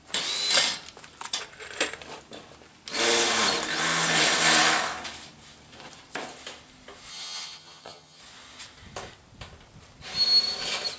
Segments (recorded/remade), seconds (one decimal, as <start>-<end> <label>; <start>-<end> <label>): 0.0-7.1 recorded; 7.1-8.2 remade; 8.2-11.0 recorded

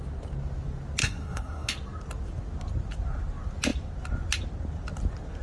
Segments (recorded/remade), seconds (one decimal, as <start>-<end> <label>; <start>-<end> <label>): 0.0-1.0 recorded; 1.0-1.7 remade; 1.7-5.4 recorded

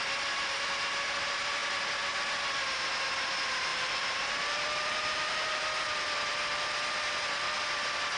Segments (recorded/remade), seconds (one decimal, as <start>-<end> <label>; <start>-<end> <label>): 0.0-3.7 recorded; 3.7-5.6 remade; 5.6-8.2 recorded

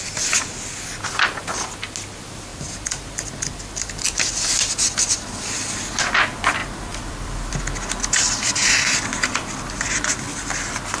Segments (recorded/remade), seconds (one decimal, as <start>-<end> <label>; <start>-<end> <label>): 0.0-2.5 recorded; 2.5-3.9 remade; 3.9-6.6 recorded; 6.6-7.6 remade; 7.6-11.0 recorded

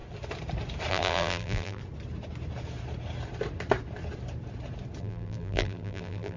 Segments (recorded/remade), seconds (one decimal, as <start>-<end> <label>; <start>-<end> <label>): 0.0-0.9 recorded; 0.9-1.8 remade; 1.8-5.0 recorded; 5.0-6.4 remade